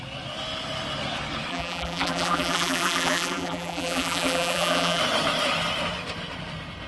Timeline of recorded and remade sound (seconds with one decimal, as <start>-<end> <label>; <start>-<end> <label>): 0.0-1.5 recorded; 1.5-5.0 remade; 5.0-6.9 recorded